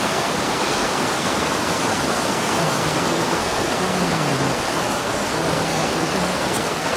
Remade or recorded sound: remade